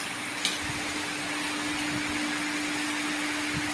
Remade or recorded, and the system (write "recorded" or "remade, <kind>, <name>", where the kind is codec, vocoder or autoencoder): recorded